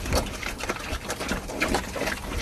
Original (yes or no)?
yes